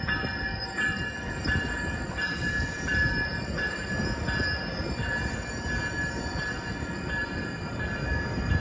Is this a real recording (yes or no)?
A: yes